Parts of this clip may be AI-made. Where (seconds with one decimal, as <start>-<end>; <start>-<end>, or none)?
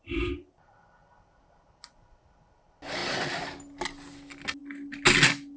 none